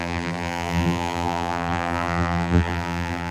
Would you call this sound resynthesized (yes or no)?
yes